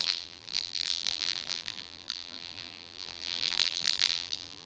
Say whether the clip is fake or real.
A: fake